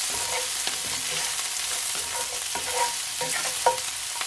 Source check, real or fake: fake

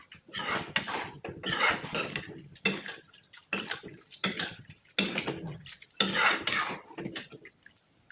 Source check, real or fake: real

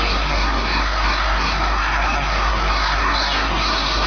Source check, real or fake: fake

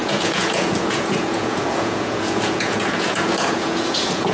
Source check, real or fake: fake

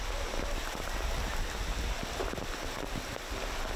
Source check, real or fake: real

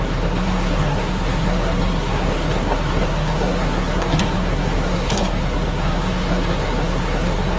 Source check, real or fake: fake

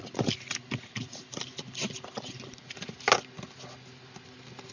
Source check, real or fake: real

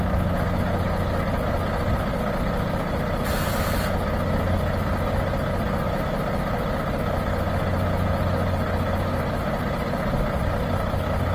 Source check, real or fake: real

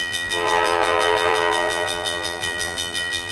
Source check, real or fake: fake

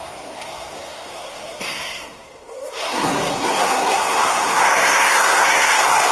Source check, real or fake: fake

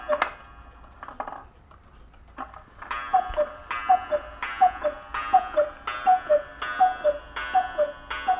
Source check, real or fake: real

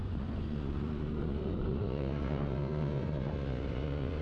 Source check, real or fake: fake